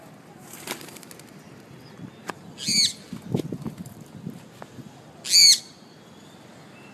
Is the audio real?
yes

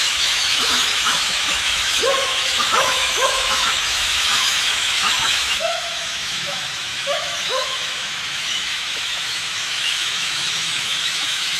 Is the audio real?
no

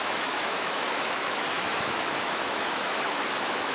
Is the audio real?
no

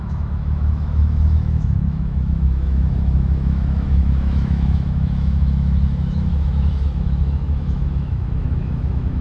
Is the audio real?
no